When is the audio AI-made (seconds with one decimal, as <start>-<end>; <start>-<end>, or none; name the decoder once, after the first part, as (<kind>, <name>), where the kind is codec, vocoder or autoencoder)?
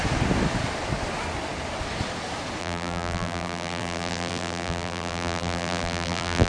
2.6-6.5 (vocoder, BigVGAN v2)